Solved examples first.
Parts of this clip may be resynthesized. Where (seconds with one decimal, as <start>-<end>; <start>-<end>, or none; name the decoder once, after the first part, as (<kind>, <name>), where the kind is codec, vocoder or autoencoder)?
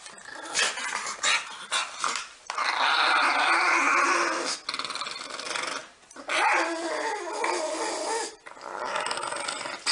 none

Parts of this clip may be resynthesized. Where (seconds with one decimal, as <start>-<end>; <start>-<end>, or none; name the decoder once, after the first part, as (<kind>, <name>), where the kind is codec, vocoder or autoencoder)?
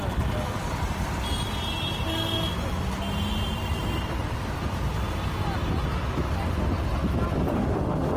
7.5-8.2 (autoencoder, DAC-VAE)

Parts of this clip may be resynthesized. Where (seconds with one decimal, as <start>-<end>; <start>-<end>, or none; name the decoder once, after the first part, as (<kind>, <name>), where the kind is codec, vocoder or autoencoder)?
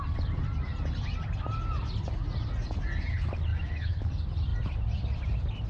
3.5-4.1 (autoencoder, DAC-VAE)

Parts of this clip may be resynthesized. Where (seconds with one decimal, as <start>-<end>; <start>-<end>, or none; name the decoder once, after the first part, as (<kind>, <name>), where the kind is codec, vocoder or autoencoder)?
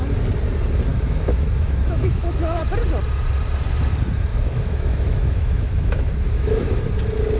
0.9-2.6 (autoencoder, DAC-VAE); 4.3-6.8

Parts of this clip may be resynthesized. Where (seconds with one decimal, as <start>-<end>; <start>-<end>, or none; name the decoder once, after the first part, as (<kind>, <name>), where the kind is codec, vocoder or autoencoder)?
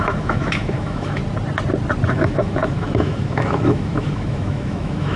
0.0-1.2 (autoencoder, DAC-VAE); 2.1-5.2